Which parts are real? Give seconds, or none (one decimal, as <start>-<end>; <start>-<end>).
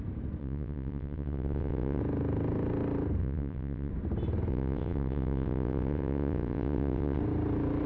0.0-0.4; 2.0-3.2; 3.9-4.5; 7.2-7.9